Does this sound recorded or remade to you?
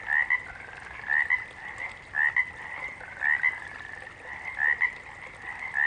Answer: recorded